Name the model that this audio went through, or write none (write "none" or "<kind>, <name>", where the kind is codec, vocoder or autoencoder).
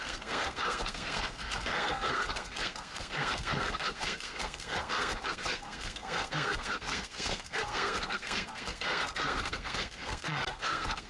codec, SNAC